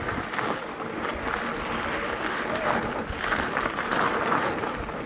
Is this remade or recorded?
recorded